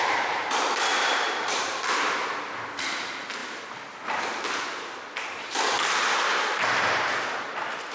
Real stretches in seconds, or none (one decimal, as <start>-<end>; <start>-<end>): 0.0-0.9; 2.3-7.9